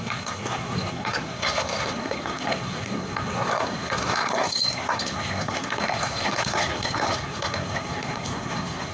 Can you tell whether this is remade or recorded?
remade